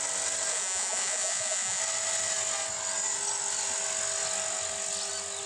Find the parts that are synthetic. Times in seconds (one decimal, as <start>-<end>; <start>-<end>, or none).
0.5-1.8